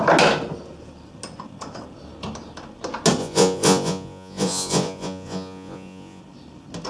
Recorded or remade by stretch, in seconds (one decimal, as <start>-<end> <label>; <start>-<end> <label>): 0.0-3.2 recorded; 3.2-6.2 remade; 6.2-6.9 recorded